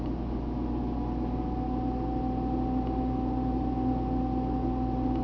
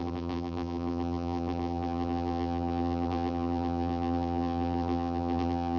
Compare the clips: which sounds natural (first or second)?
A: first